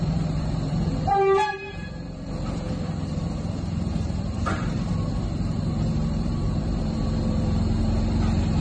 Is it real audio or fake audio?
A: fake